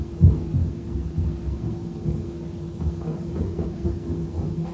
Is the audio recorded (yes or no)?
no